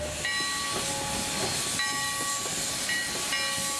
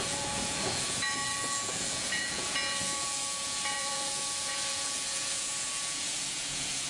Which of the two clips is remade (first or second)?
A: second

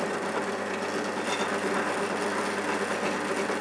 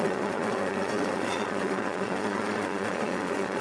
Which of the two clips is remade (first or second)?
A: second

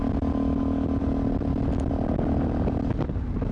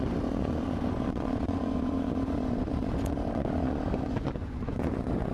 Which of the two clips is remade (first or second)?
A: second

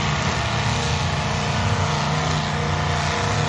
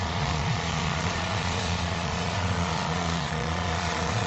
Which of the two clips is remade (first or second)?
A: second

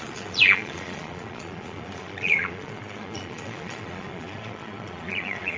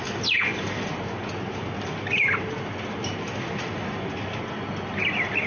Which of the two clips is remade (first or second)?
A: first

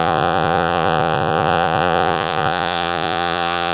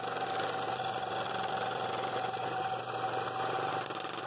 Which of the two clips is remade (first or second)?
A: first